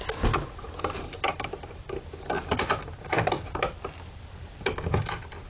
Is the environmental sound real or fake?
real